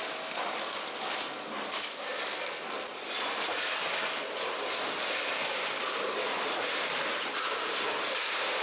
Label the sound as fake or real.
fake